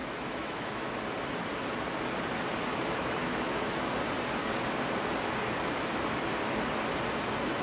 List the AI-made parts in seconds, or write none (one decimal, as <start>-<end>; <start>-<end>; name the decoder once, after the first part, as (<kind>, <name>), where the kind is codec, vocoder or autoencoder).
0.0-0.9 (autoencoder, DAC-VAE); 2.7-3.9